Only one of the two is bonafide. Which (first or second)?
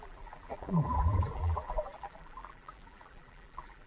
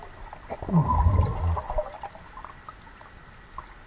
second